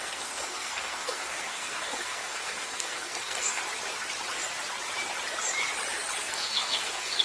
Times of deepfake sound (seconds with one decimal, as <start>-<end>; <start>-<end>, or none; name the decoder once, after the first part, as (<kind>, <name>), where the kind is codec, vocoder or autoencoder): 0.0-3.6 (codec, SNAC); 6.2-7.2